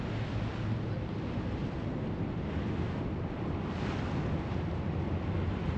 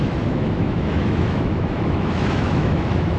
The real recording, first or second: first